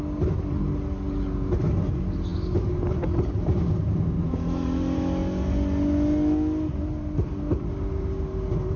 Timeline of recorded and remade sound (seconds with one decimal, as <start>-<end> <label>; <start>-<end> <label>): 0.0-8.8 recorded